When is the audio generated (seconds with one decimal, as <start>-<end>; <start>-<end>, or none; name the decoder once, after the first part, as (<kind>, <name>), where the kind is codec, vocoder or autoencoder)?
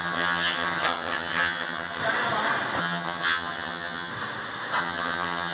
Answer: 0.0-2.0 (vocoder, HiFi-GAN); 2.8-4.1; 4.8-5.5